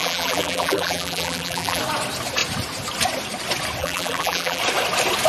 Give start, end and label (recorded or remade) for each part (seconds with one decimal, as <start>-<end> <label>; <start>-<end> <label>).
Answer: 0.0-1.8 remade; 1.8-3.8 recorded; 3.8-4.6 remade; 4.6-5.3 recorded